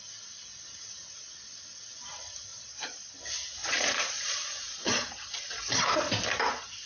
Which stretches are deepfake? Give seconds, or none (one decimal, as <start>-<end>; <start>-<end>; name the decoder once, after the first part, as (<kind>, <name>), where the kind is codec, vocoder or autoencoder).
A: 2.5-3.1 (vocoder, Vocos); 3.6-6.1